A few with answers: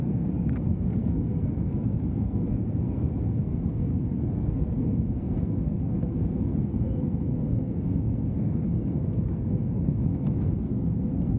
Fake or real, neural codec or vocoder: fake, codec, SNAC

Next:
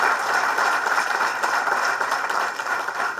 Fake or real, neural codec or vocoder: fake, vocoder, BigVGAN v2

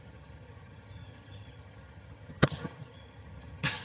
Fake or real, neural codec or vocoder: fake, vocoder, HiFi-GAN